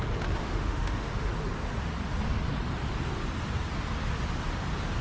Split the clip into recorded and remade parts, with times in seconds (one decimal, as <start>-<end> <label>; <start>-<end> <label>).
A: 0.0-0.4 recorded; 0.4-1.2 remade; 1.2-5.0 recorded